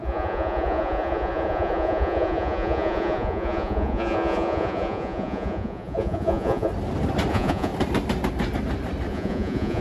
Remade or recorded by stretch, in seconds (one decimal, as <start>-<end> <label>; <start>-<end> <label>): 0.0-6.7 remade; 6.7-7.3 recorded; 7.3-7.7 remade; 7.7-9.1 recorded; 9.1-9.8 remade